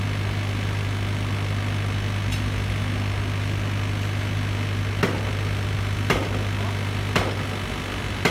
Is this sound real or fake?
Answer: real